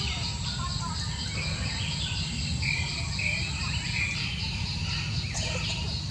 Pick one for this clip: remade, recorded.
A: recorded